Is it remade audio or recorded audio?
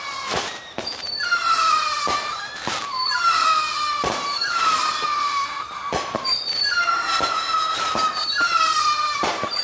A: remade